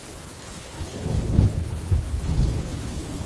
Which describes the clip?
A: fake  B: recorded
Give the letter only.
A